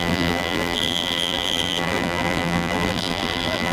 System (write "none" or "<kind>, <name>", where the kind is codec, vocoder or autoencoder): vocoder, BigVGAN v2